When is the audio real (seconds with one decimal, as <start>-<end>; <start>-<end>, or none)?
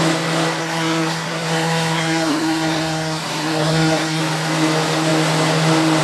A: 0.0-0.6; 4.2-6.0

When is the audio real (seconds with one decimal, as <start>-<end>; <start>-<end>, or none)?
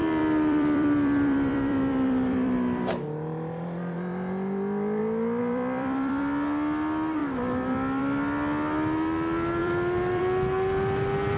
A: 5.0-5.4; 6.2-9.6; 10.2-11.4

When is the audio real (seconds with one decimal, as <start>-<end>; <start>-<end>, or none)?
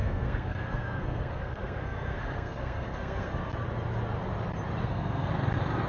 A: 3.5-4.8; 5.3-5.9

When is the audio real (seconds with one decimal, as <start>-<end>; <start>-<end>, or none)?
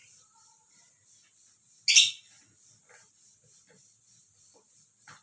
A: 0.0-5.2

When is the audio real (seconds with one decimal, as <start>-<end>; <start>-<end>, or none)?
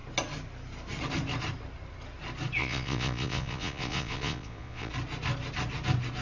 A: 0.0-2.6; 4.9-6.2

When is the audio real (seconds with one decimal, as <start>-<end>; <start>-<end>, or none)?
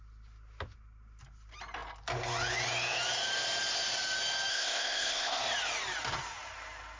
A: 0.0-4.5; 5.4-7.0